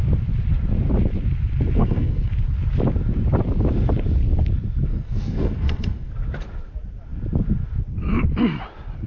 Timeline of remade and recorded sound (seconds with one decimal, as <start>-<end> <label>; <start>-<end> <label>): 0.0-1.8 recorded; 1.8-2.3 remade; 2.3-4.9 recorded; 4.9-6.1 remade; 6.1-9.1 recorded